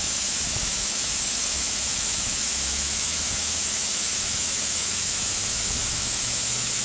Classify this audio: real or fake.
fake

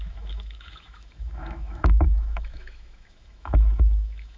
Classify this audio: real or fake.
fake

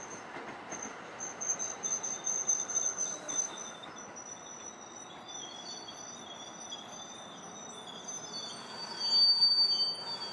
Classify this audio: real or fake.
real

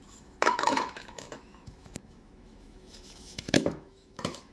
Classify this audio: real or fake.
fake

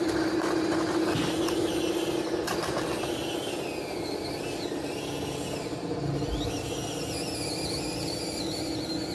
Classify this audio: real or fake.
real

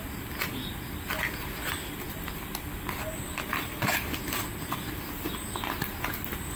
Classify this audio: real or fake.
real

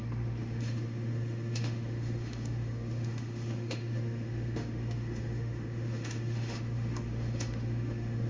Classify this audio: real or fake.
fake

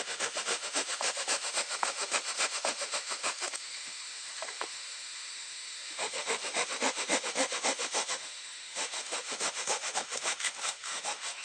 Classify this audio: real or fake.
fake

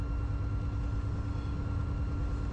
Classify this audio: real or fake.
real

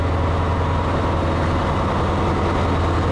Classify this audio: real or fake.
real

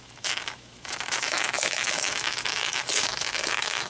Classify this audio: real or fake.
fake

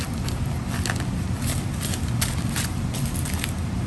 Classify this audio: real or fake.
real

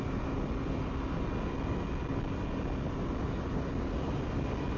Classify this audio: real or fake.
real